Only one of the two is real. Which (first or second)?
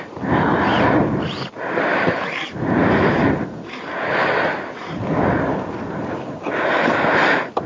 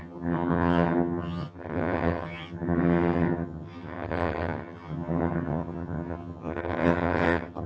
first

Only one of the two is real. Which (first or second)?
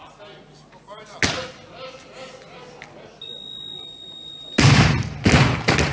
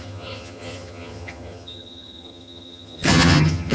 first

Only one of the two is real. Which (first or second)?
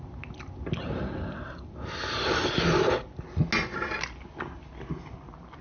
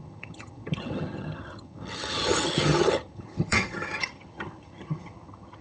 first